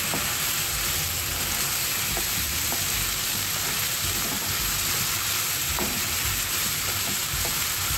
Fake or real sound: fake